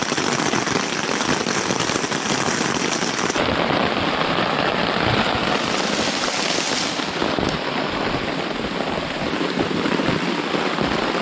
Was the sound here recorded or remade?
recorded